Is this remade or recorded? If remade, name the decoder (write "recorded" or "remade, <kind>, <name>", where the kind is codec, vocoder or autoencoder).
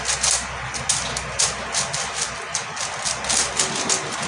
recorded